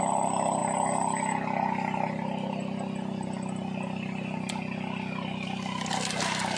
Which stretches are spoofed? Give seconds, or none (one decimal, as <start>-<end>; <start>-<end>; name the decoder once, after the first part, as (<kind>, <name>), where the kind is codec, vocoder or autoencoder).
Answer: none